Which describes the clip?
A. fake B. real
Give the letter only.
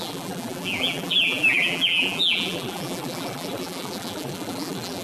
A